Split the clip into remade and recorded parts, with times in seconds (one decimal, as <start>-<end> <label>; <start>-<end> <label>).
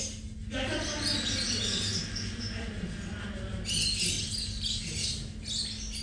0.0-6.0 recorded